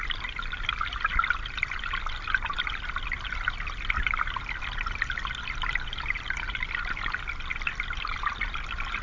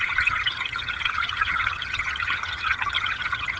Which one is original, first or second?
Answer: first